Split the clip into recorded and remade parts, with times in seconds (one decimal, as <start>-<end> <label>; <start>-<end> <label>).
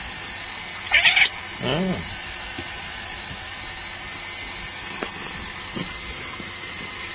0.0-0.7 recorded; 0.7-1.4 remade; 1.4-7.1 recorded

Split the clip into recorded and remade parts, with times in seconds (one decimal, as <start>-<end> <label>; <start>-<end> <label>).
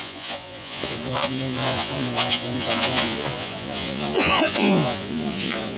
0.0-5.8 remade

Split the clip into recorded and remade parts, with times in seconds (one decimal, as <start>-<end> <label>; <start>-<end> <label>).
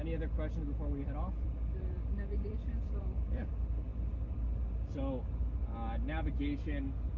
0.0-1.0 recorded; 1.0-3.5 remade; 3.5-7.2 recorded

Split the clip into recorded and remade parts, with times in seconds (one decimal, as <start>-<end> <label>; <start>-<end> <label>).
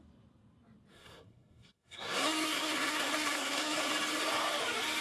0.0-0.9 recorded; 0.9-3.9 remade; 3.9-5.0 recorded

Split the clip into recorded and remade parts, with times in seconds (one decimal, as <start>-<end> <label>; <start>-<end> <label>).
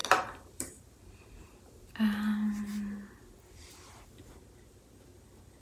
0.0-1.9 remade; 1.9-5.6 recorded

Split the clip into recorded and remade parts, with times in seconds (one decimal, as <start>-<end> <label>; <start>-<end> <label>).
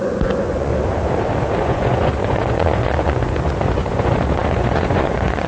0.0-0.7 remade; 0.7-1.6 recorded; 1.6-5.5 remade